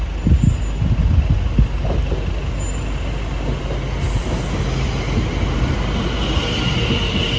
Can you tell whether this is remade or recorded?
recorded